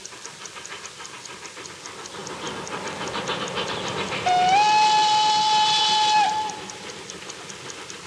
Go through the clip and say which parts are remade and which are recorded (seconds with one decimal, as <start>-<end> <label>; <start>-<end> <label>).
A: 0.0-8.1 recorded